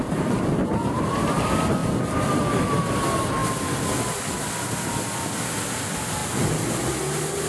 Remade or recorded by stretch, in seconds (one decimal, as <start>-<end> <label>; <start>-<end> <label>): 0.0-1.8 recorded; 1.8-2.7 remade; 2.7-7.5 recorded